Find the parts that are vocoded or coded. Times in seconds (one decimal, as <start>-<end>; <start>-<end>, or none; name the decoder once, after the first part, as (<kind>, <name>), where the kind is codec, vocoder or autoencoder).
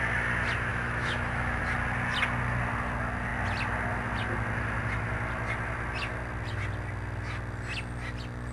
0.7-1.6 (autoencoder, DAC-VAE)